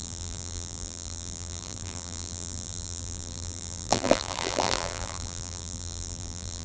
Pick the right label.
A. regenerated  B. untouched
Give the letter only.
A